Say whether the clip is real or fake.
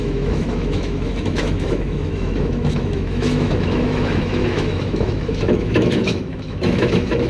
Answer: fake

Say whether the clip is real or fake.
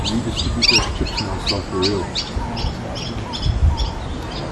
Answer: real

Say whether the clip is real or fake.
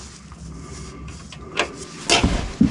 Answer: real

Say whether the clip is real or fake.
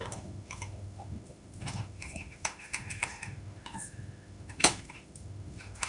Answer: fake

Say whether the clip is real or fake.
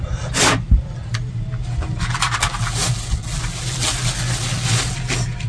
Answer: real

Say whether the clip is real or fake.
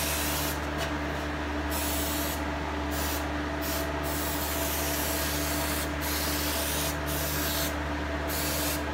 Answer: real